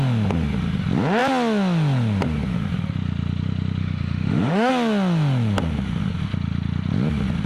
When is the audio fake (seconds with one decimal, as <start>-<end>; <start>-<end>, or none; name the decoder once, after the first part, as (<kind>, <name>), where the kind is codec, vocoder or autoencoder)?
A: 3.8-4.7 (autoencoder, DAC-VAE)